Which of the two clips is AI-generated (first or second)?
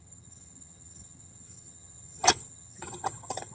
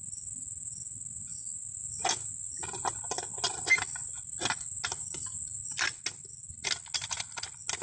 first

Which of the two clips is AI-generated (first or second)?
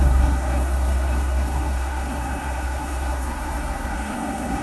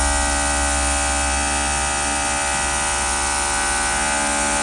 first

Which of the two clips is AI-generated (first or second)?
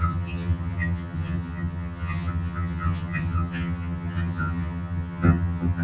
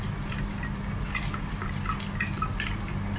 first